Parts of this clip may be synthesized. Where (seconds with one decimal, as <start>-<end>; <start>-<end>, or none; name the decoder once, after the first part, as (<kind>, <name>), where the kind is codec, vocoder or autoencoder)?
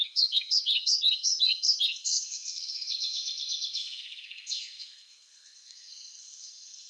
0.0-6.9 (codec, SNAC)